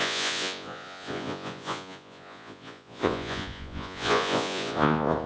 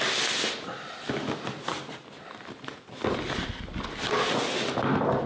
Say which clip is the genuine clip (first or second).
second